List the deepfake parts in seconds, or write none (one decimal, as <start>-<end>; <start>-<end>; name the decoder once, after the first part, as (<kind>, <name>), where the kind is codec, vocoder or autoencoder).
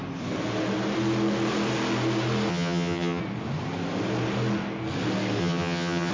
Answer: 2.5-3.2 (vocoder, HiFi-GAN); 5.4-6.1